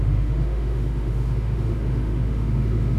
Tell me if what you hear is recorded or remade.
remade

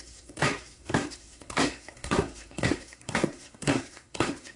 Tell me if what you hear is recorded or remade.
remade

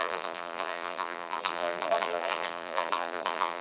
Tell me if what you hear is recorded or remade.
remade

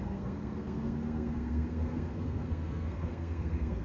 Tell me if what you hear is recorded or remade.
remade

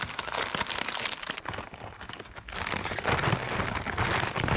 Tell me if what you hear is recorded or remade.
recorded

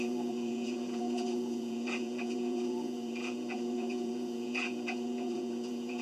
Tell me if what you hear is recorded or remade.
remade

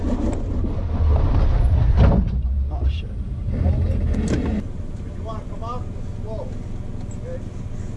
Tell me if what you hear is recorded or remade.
recorded